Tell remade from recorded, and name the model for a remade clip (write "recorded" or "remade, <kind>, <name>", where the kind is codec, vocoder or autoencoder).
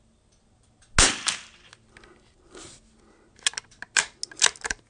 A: recorded